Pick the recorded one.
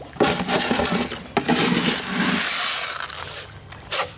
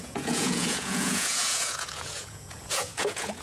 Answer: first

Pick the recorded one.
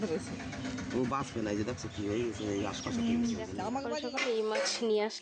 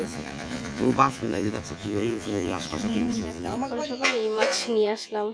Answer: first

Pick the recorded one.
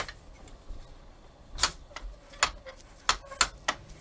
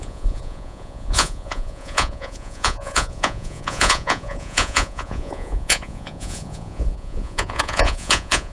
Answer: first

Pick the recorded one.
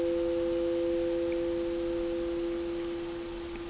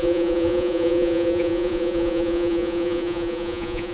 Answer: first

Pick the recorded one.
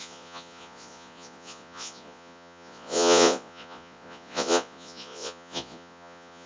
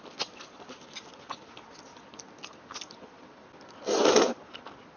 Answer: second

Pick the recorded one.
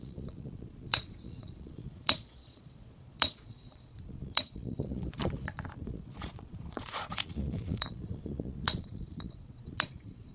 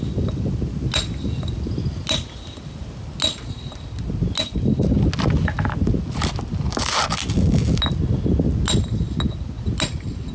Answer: second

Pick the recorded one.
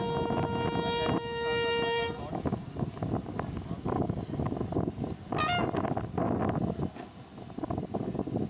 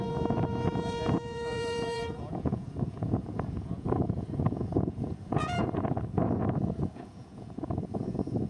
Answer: first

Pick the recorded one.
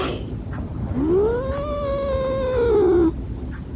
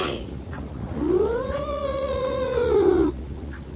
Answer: first